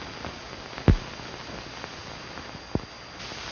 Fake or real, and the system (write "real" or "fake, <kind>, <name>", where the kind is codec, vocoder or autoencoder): real